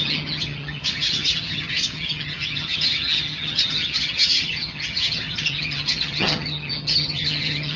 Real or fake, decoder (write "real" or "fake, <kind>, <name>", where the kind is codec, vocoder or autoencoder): fake, vocoder, HiFi-GAN